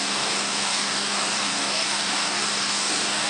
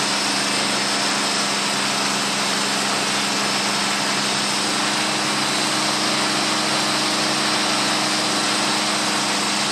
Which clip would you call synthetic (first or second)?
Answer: first